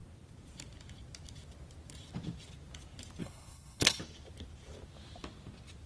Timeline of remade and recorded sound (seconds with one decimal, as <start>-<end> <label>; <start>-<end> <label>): 0.0-3.2 recorded; 3.2-4.0 remade; 4.0-5.9 recorded